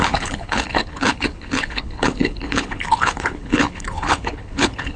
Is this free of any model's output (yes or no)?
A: no